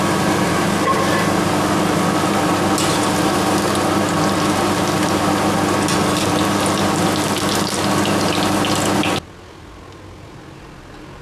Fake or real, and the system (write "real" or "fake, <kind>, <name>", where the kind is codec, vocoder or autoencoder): real